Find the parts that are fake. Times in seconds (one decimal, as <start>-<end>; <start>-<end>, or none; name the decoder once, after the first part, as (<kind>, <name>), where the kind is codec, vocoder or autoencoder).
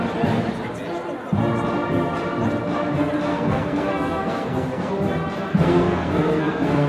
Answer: 3.3-4.9 (codec, SNAC); 5.5-6.9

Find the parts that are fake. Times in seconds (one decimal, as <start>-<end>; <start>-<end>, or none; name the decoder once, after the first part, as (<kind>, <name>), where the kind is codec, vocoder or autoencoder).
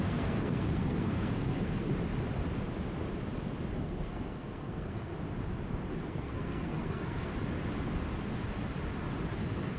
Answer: 0.0-1.9 (codec, SNAC); 3.7-5.1; 5.9-7.3; 9.4-9.8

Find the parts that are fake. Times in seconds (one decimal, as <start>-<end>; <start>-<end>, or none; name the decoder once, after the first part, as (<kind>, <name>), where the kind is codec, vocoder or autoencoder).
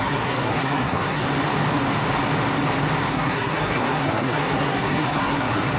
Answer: 0.0-1.2 (codec, SNAC); 3.1-5.8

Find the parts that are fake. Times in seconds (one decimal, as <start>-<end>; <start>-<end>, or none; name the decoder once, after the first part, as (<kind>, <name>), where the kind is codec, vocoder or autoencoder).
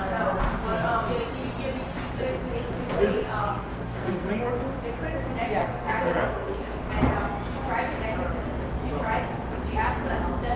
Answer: 3.4-4.3 (codec, SNAC); 5.6-6.9